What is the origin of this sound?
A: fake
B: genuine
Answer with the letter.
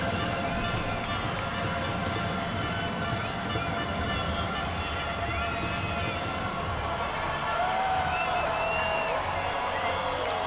B